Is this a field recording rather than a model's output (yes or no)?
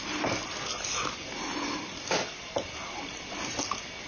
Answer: yes